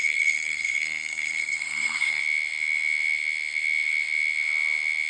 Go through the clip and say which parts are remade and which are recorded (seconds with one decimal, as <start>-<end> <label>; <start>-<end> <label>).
0.0-2.2 remade; 2.2-5.1 recorded